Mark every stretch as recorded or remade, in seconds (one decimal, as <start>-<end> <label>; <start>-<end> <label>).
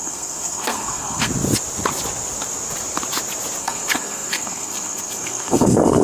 0.0-1.3 remade; 1.3-3.6 recorded; 3.6-6.0 remade